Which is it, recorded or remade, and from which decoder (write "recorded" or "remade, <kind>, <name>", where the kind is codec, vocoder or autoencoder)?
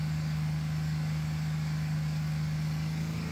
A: remade, codec, DAC